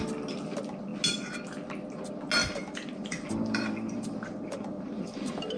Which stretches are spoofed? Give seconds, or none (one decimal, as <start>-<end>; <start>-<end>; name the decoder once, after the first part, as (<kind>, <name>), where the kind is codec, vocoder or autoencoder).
2.4-5.6 (vocoder, BigVGAN v2)